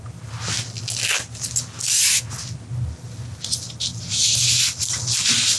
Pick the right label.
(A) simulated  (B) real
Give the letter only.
B